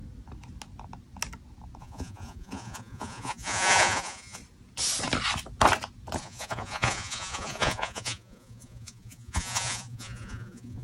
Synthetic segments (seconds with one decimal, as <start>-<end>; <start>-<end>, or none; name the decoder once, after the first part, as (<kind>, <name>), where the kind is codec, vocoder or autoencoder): 1.8-4.4 (vocoder, Vocos); 6.2-10.8